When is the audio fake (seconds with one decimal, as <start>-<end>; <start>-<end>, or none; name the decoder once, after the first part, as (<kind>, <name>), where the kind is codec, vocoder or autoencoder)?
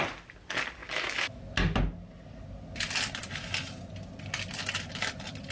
0.8-1.4 (autoencoder, DAC-VAE)